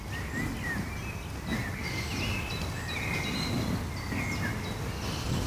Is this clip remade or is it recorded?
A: recorded